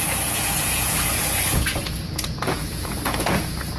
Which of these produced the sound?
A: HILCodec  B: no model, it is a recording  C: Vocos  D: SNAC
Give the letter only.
C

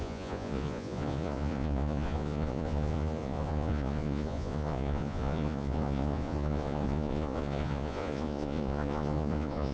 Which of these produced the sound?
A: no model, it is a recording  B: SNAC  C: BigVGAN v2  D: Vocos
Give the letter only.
D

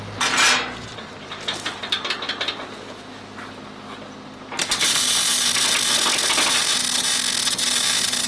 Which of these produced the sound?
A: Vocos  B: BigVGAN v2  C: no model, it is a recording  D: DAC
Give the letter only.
C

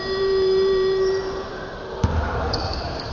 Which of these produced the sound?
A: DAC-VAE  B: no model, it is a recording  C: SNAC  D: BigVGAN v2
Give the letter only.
D